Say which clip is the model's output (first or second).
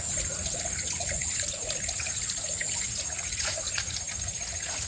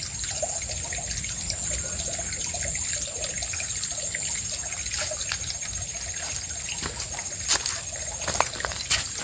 first